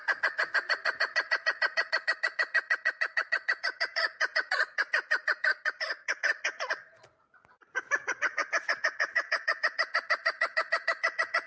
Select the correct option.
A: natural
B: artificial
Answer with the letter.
B